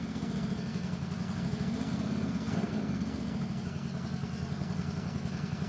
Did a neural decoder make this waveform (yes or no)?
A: yes